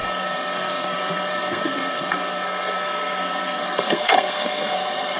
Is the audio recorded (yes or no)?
no